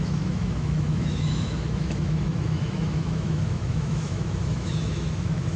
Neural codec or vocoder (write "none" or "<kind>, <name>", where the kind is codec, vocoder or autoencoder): autoencoder, DAC-VAE